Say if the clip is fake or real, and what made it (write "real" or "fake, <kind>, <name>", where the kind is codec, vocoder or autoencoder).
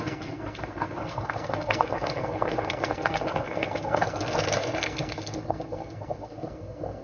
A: fake, codec, SNAC